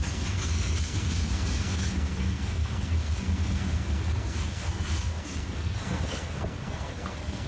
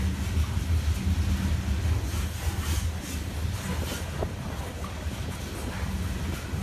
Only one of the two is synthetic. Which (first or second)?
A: first